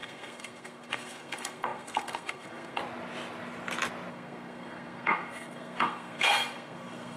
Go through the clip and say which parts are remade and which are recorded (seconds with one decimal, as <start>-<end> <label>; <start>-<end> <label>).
0.0-2.8 remade; 2.8-4.1 recorded; 4.1-7.2 remade